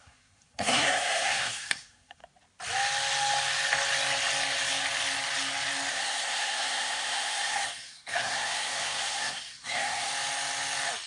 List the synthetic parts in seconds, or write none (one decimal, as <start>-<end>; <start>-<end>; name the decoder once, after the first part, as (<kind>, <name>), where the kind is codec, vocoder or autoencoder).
0.0-2.2 (codec, SNAC); 5.9-10.1